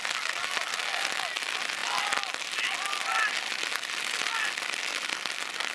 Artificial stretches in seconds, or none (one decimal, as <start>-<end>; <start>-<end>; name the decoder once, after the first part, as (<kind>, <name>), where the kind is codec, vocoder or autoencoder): none